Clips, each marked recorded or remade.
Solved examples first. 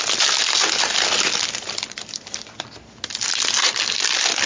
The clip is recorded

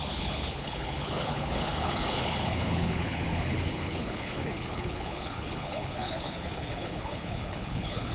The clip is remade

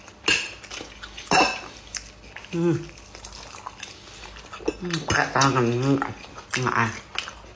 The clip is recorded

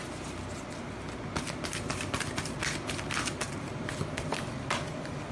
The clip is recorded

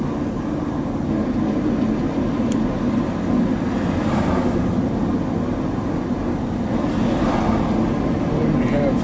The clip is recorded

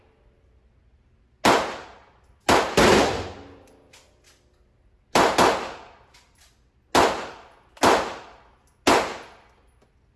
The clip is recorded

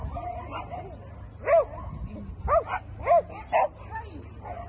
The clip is recorded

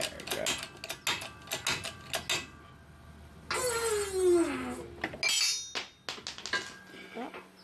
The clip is recorded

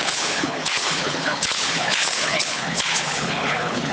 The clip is remade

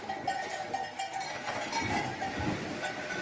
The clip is recorded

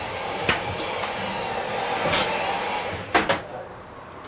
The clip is recorded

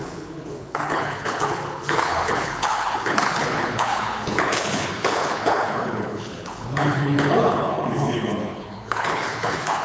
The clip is remade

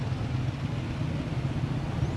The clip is recorded